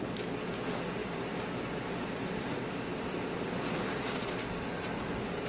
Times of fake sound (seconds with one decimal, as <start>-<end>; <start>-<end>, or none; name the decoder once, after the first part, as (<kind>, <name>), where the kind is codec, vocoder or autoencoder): 1.0-4.3 (vocoder, BigVGAN v2); 4.7-5.5